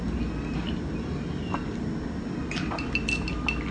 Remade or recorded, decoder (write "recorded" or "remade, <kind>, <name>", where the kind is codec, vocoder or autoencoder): recorded